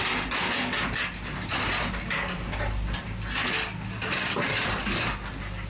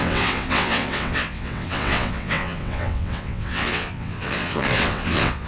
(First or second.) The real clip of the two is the first